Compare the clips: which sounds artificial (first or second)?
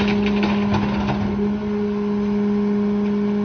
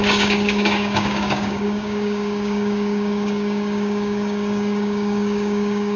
second